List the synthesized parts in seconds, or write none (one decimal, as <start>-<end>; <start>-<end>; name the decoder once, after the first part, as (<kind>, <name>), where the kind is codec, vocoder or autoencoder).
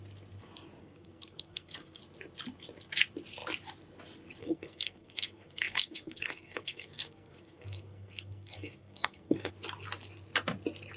0.8-2.0 (codec, SNAC); 4.4-9.5